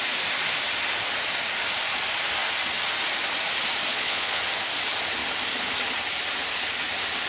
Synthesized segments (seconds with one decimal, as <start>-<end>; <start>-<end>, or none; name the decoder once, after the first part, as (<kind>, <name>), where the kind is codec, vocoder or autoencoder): 3.9-4.4 (vocoder, Vocos)